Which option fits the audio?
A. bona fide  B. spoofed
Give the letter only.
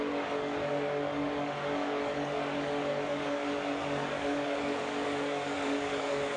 B